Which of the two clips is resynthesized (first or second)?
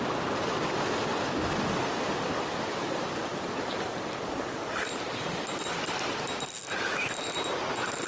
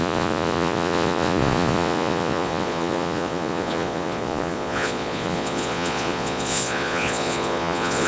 second